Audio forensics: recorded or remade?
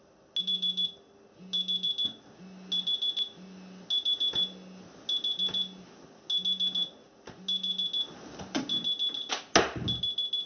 recorded